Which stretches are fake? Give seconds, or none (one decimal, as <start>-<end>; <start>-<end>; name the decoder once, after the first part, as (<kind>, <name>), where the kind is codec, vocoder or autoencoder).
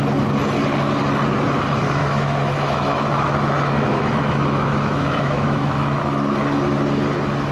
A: 2.0-6.0 (autoencoder, DAC-VAE)